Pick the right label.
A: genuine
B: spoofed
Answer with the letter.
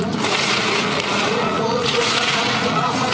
B